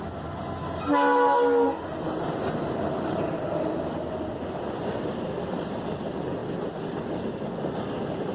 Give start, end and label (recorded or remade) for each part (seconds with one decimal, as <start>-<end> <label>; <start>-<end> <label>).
0.0-8.3 recorded